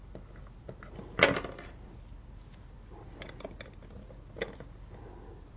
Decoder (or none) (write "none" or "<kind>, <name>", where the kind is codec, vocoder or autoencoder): none